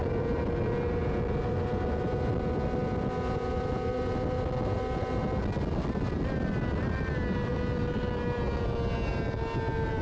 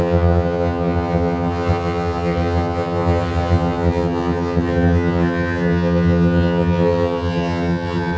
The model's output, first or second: second